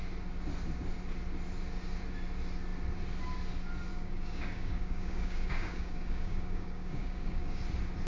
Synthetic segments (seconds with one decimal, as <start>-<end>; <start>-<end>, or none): 3.9-7.6